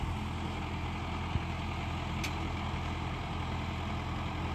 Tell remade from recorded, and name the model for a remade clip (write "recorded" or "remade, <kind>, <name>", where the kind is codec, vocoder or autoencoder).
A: recorded